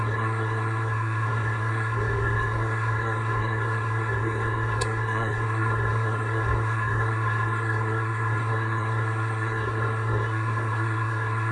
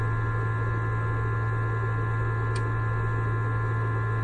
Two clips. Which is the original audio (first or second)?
second